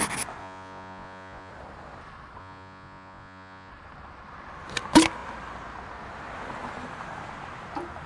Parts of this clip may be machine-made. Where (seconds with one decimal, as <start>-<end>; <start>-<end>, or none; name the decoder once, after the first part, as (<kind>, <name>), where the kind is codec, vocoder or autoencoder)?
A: 0.4-1.5 (vocoder, Vocos); 2.4-3.7